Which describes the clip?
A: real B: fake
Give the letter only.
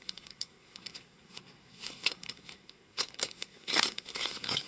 B